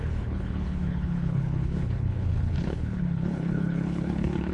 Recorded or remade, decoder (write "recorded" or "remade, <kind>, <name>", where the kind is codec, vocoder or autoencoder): remade, codec, HILCodec